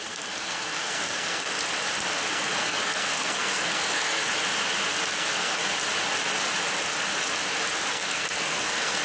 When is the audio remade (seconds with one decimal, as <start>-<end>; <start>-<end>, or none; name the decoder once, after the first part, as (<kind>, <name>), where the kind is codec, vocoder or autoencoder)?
0.0-1.5 (codec, SNAC); 2.2-4.3; 5.1-5.6; 7.9-9.0

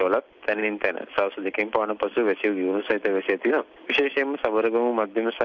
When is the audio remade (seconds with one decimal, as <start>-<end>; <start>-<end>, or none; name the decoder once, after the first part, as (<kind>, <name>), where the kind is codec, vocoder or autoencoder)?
none

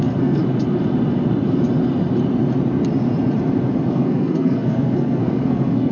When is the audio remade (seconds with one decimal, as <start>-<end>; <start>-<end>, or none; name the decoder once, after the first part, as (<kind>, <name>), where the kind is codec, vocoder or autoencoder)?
0.0-0.4 (codec, SNAC); 3.9-5.9